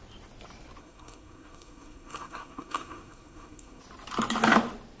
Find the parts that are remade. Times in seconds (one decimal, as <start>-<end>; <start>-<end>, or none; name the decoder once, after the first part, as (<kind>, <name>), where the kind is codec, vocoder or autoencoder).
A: 0.8-3.8 (codec, SNAC)

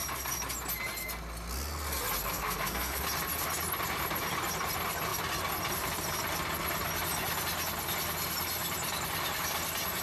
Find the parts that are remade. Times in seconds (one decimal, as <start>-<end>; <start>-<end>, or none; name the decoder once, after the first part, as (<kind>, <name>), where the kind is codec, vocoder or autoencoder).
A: 2.2-3.0 (codec, SNAC)

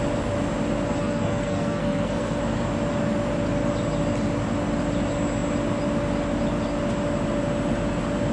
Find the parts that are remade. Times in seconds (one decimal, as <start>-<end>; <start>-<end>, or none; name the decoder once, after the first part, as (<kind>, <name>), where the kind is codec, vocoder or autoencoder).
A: 1.0-2.4 (codec, SNAC)

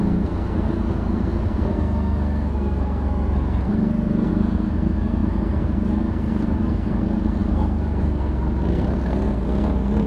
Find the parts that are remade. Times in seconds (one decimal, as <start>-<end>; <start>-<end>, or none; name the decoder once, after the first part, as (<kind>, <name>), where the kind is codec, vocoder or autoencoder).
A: 0.0-10.1 (codec, SNAC)

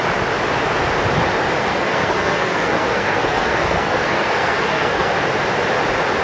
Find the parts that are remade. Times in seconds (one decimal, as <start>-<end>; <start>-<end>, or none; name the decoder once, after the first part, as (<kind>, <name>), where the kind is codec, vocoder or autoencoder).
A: 1.6-5.1 (codec, SNAC)